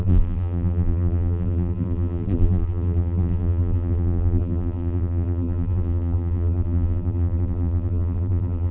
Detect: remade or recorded remade